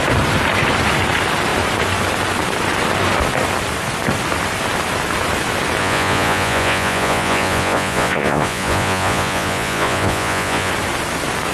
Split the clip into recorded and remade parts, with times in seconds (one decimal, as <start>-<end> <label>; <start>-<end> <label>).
0.0-5.8 recorded; 5.8-10.7 remade; 10.7-11.5 recorded